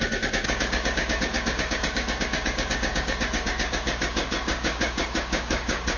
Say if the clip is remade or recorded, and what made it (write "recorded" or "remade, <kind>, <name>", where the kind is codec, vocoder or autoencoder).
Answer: remade, codec, DAC